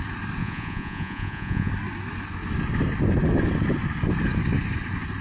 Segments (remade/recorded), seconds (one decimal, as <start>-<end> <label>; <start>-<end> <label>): 0.0-0.4 recorded; 0.4-1.7 remade; 1.7-5.2 recorded